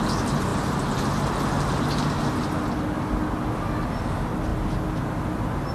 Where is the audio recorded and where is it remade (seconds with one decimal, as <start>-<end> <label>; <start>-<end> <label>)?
0.0-5.7 recorded